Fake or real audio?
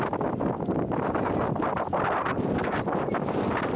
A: real